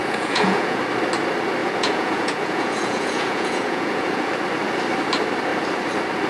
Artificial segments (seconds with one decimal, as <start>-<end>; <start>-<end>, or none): 0.0-0.8; 1.6-4.3